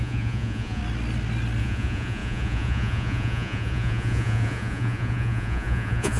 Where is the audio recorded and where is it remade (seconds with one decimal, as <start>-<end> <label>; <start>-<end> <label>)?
0.0-0.8 remade; 0.8-1.6 recorded; 1.6-6.2 remade